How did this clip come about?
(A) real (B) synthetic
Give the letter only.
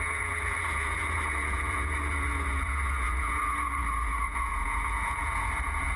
B